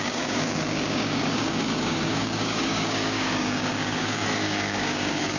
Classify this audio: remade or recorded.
remade